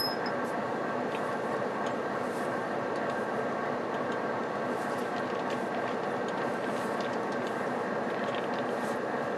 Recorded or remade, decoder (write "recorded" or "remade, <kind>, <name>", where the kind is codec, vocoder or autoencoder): recorded